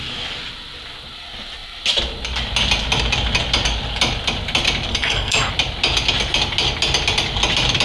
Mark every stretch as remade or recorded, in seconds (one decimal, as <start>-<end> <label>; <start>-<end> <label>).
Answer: 0.0-4.9 recorded; 4.9-5.5 remade; 5.5-7.8 recorded